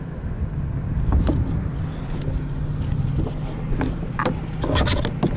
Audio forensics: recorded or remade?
recorded